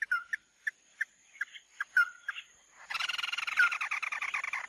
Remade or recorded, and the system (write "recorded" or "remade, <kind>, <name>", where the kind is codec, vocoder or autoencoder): remade, vocoder, BigVGAN v2